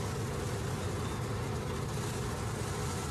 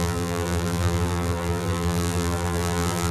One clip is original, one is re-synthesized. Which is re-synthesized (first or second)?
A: second